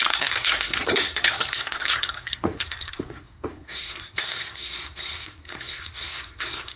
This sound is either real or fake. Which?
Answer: fake